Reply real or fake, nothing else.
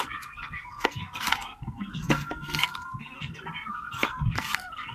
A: fake